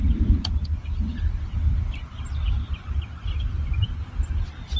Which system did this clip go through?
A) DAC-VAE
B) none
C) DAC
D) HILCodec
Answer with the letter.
B